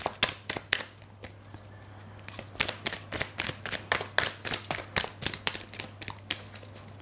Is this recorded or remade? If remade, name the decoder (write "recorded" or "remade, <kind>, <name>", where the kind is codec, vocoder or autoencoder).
recorded